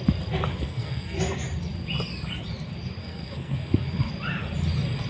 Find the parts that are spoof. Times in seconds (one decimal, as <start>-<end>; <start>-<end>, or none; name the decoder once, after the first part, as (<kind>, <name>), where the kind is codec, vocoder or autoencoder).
0.5-1.2 (codec, SNAC); 3.0-4.1